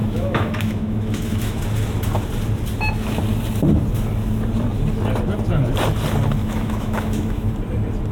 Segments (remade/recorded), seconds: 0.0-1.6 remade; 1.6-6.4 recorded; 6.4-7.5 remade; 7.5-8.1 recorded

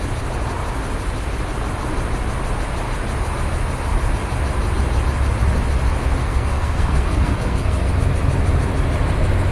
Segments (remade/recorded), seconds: 0.0-6.2 recorded; 6.2-7.9 remade; 7.9-9.5 recorded

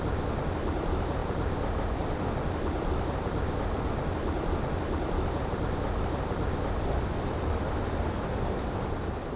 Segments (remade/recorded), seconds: 0.0-9.4 recorded

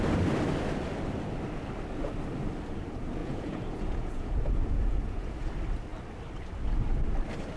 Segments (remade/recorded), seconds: 0.0-3.2 recorded; 3.2-5.5 remade; 5.5-7.6 recorded

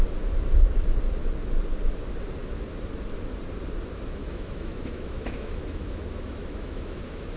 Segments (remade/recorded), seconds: 0.0-4.2 recorded; 4.2-7.4 remade

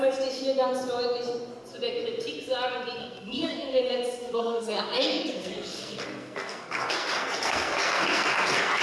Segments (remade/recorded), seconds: 0.0-3.0 recorded; 3.0-3.8 remade; 3.8-4.2 recorded; 4.2-8.8 remade

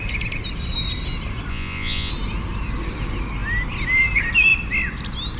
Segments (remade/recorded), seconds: 0.0-1.5 recorded; 1.5-2.1 remade; 2.1-5.4 recorded